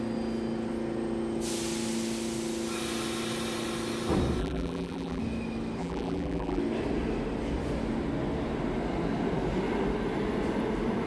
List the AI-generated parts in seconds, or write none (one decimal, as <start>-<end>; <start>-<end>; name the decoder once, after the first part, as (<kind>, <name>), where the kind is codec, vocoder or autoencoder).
4.4-5.2 (vocoder, BigVGAN v2); 5.8-6.6